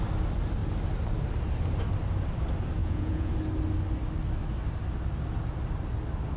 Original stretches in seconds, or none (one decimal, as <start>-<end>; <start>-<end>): 0.0-2.8; 3.3-6.4